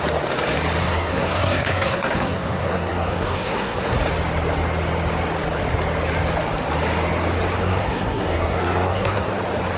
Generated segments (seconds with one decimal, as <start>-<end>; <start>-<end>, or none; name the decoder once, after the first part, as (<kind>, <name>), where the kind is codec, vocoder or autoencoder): 0.8-4.0 (codec, SNAC); 7.6-9.3